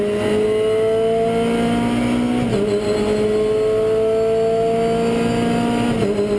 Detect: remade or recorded recorded